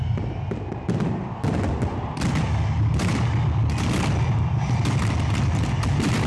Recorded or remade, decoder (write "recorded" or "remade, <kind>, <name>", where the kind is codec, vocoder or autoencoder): recorded